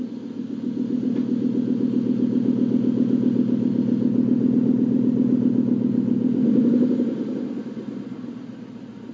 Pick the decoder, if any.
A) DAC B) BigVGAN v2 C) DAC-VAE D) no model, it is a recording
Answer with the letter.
D